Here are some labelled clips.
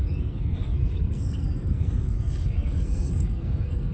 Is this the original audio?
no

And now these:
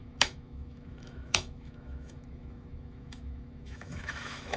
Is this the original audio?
no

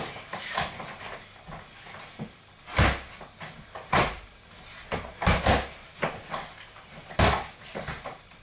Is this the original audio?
yes